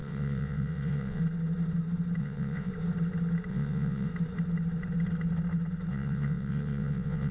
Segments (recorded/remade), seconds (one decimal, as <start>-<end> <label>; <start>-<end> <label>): 0.0-1.2 remade; 1.2-2.2 recorded; 2.2-2.7 remade; 2.7-3.5 recorded; 3.5-4.1 remade; 4.1-5.9 recorded; 5.9-7.3 remade